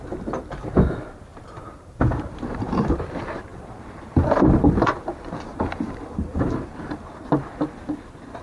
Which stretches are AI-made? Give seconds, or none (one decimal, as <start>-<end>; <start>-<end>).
1.3-3.0; 3.5-7.3